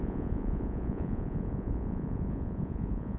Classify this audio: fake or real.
fake